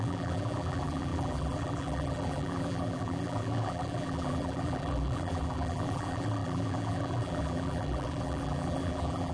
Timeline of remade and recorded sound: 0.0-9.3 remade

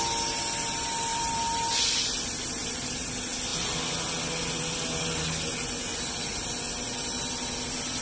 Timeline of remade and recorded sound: 0.0-1.1 recorded; 1.1-2.7 remade; 2.7-8.0 recorded